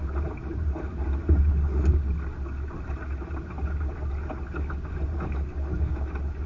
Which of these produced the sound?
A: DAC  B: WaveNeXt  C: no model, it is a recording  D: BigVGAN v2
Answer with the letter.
C